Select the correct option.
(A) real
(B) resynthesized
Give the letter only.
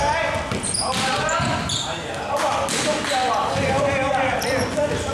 A